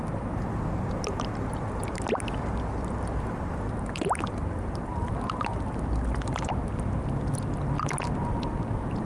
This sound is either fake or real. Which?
real